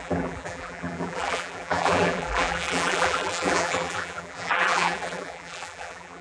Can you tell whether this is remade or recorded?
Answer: remade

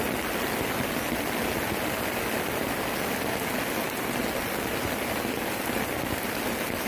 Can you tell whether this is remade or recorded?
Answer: recorded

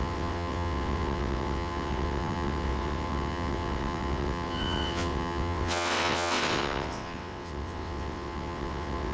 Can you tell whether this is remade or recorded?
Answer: remade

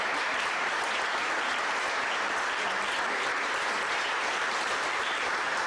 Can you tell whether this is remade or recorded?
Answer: recorded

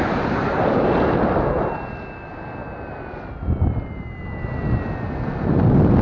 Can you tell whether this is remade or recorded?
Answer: recorded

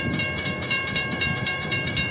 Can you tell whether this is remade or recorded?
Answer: remade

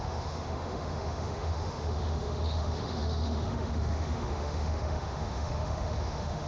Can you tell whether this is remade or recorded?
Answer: remade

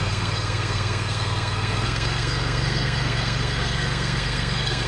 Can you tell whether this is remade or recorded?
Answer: remade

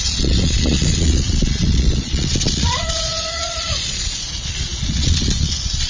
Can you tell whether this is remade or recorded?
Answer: remade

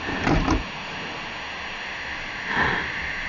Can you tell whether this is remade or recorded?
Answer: recorded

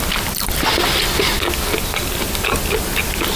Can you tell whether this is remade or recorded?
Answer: recorded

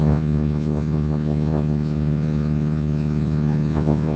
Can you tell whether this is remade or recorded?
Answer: remade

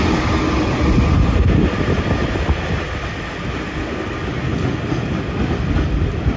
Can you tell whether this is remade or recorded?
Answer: recorded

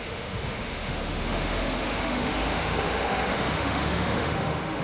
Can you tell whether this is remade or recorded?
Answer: remade